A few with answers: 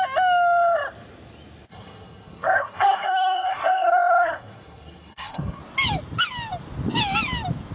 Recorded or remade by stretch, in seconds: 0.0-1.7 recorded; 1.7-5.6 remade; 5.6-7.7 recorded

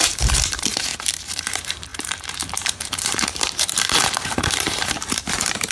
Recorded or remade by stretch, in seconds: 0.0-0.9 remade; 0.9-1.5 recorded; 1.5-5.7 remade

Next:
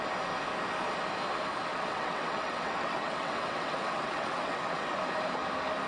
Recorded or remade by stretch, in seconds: 0.0-1.7 recorded; 1.7-4.9 remade; 4.9-5.9 recorded

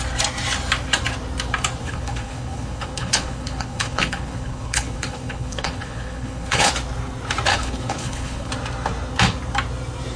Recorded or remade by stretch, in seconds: 0.0-1.8 recorded; 1.8-6.7 remade; 6.7-7.5 recorded; 7.5-8.5 remade; 8.5-10.2 recorded

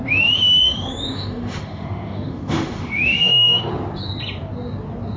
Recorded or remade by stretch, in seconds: 0.0-0.6 recorded; 0.6-3.7 remade; 3.7-5.2 recorded

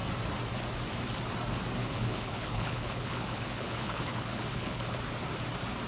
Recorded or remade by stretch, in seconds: 0.0-1.8 recorded; 1.8-5.0 remade; 5.0-5.9 recorded

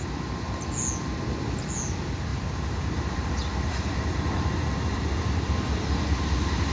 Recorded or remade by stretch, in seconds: 0.0-2.3 recorded; 2.3-5.3 remade; 5.3-6.7 recorded

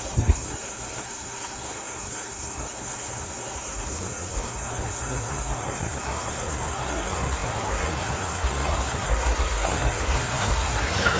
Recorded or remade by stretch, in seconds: 0.0-11.2 remade